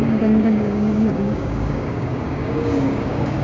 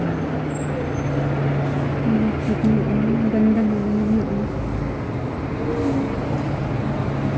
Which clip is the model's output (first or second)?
first